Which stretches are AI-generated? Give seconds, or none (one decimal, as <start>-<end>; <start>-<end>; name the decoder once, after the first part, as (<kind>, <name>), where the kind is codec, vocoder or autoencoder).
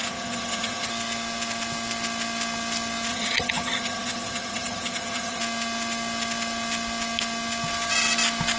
0.0-0.9 (vocoder, HiFi-GAN); 3.1-5.4